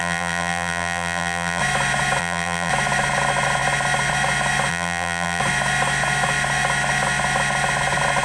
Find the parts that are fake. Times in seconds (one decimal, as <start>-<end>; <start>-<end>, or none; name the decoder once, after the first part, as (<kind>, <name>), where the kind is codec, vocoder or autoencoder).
0.0-1.6 (vocoder, BigVGAN v2); 2.2-2.7; 4.7-5.4